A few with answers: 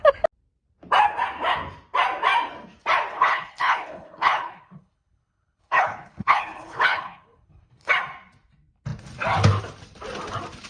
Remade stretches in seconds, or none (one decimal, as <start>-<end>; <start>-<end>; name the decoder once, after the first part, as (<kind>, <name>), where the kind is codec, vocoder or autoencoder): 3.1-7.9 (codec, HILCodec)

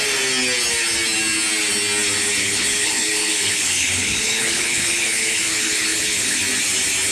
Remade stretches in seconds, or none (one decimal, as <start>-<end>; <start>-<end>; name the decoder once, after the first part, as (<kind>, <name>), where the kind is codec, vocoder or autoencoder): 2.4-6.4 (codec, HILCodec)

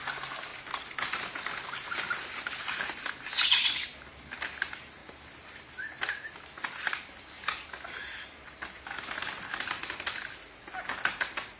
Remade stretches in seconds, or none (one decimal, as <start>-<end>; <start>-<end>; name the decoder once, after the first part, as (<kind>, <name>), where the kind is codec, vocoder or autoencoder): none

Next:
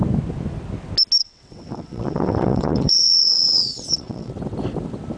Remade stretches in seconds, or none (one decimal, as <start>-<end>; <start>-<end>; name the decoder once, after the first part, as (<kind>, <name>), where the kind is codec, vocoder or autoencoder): 1.2-4.3 (vocoder, WaveNeXt)

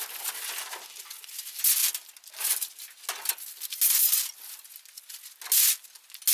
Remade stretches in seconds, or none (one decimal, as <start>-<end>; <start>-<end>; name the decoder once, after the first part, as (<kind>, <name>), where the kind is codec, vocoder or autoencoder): none

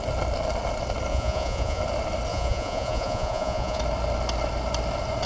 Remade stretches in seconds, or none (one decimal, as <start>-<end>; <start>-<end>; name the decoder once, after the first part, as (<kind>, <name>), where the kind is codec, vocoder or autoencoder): 1.1-1.8 (vocoder, Vocos); 2.3-3.8